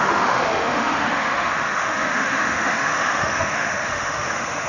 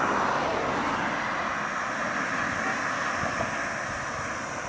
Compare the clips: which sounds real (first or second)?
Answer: second